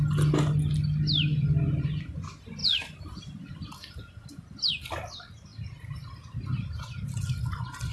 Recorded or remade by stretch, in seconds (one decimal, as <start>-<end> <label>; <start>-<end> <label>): 0.0-2.6 recorded; 2.6-4.7 remade; 4.7-5.5 recorded; 5.5-6.8 remade; 6.8-7.9 recorded